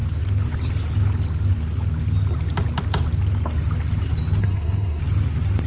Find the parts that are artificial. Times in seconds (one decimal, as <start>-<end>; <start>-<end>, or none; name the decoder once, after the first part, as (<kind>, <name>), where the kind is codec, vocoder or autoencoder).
4.4-5.0 (codec, SNAC)

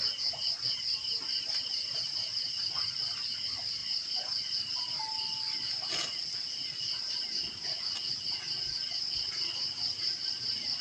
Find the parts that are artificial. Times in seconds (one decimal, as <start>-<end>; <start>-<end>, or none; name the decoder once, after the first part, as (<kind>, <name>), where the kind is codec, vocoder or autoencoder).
none

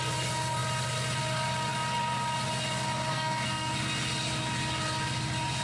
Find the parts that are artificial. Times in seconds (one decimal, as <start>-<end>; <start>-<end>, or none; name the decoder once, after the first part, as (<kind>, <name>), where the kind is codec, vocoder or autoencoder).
3.1-3.7 (codec, SNAC)